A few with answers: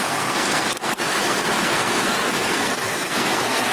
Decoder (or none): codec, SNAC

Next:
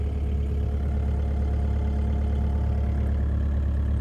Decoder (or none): none